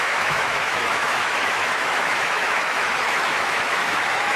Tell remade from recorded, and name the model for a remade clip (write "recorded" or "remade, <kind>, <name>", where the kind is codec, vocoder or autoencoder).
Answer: remade, autoencoder, DAC-VAE